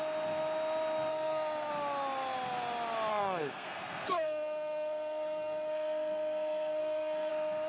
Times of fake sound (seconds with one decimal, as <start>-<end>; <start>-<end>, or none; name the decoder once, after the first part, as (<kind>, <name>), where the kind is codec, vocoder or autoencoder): 1.1-1.7 (codec, SNAC); 3.1-7.3